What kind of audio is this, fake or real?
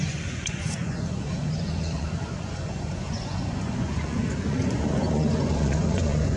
fake